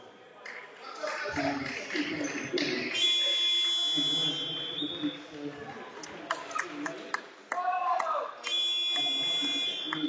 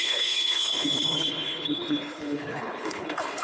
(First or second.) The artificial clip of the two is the second